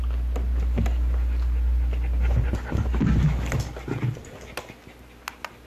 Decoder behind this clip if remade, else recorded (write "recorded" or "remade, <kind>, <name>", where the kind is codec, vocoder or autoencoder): recorded